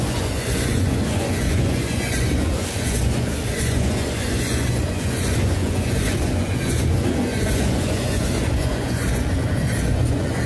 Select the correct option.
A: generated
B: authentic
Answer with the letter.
A